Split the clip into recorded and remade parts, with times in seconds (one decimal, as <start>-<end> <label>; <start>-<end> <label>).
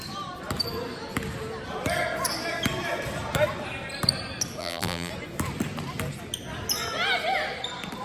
0.0-4.6 recorded; 4.6-5.1 remade; 5.1-8.0 recorded